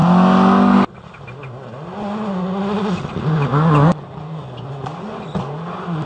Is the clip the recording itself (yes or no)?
yes